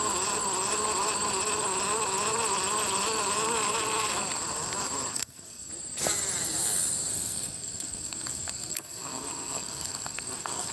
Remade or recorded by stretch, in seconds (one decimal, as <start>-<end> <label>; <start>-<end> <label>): 0.0-5.1 recorded; 5.1-5.7 remade; 5.7-7.1 recorded; 7.1-10.7 remade